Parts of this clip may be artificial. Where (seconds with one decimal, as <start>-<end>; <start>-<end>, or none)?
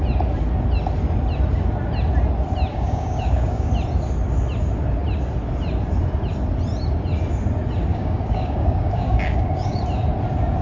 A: 2.7-3.7; 7.9-9.8